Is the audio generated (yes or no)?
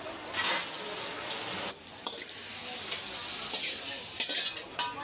no